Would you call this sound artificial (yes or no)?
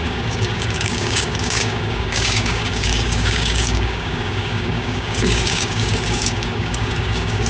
yes